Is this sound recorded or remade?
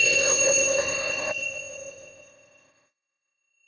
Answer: remade